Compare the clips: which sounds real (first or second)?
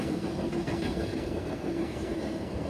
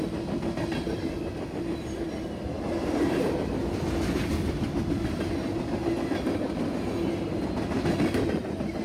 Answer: second